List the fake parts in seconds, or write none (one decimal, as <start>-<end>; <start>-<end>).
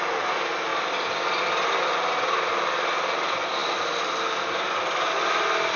none